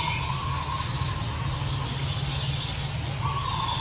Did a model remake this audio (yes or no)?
no